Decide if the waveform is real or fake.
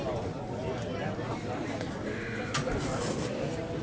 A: real